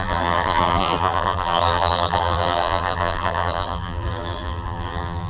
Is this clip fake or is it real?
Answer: fake